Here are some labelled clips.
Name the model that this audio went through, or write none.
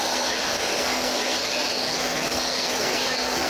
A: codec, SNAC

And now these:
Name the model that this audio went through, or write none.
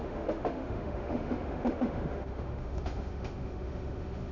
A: autoencoder, DAC-VAE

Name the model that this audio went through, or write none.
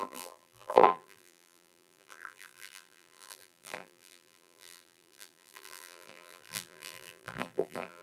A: vocoder, BigVGAN v2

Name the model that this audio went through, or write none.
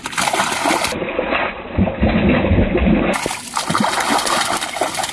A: none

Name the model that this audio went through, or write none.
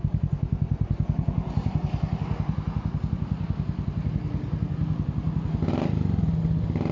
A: none